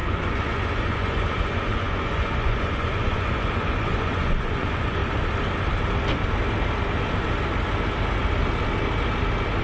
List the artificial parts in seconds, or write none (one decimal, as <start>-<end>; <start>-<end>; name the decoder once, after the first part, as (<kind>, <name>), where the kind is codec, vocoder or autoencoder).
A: 0.0-5.0 (vocoder, Vocos)